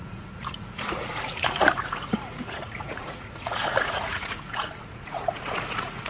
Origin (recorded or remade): remade